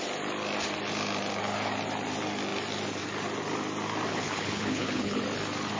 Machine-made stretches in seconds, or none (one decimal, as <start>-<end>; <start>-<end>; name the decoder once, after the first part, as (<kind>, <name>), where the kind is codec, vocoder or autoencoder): 4.1-5.2 (codec, HILCodec)